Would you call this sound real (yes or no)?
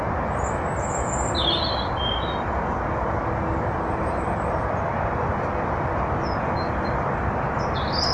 yes